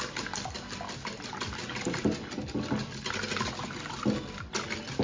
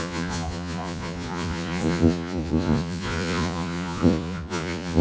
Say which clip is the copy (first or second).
second